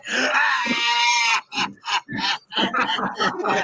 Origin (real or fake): fake